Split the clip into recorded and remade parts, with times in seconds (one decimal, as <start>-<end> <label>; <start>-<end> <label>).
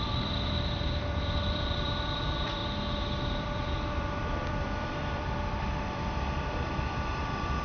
0.0-2.6 remade; 2.6-3.2 recorded; 3.2-7.6 remade